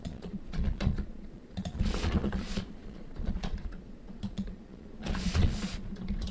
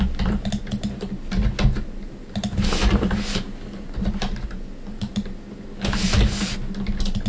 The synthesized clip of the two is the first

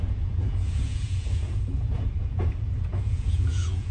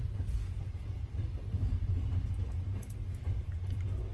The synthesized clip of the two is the first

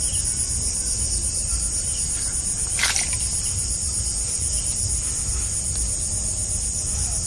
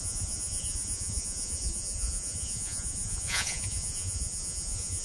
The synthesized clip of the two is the second